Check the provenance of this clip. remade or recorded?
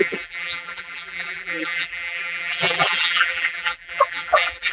remade